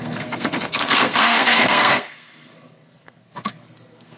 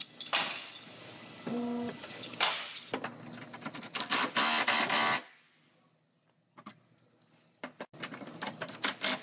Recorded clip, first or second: second